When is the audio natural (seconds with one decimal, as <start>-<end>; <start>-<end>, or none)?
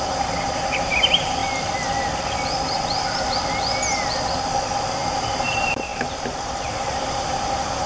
1.4-4.9; 5.9-7.1